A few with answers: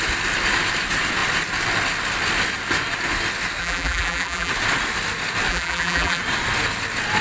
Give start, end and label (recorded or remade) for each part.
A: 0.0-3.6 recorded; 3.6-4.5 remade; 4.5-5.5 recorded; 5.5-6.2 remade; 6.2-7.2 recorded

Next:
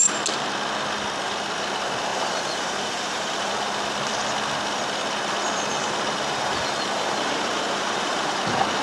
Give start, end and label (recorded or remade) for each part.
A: 0.0-2.1 recorded; 2.1-3.5 remade; 3.5-5.8 recorded; 5.8-8.4 remade; 8.4-8.8 recorded

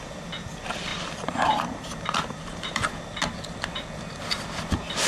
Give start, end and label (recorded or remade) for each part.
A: 0.0-0.9 recorded; 0.9-2.9 remade; 2.9-5.1 recorded

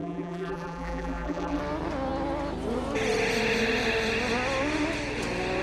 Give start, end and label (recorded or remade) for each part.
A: 0.0-1.6 remade; 1.6-5.6 recorded

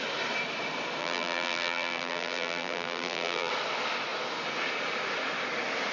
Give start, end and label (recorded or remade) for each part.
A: 0.0-1.0 recorded; 1.0-3.5 remade; 3.5-5.9 recorded

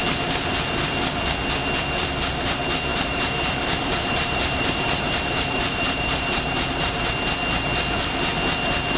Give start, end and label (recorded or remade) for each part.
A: 0.0-2.9 recorded; 2.9-7.1 remade; 7.1-9.0 recorded

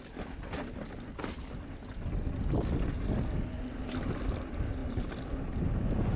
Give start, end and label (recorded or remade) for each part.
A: 0.0-6.2 recorded

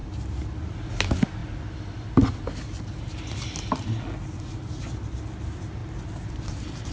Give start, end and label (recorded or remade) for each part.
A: 0.0-0.7 remade; 0.7-4.2 recorded; 4.2-4.8 remade; 4.8-5.8 recorded; 5.8-6.9 remade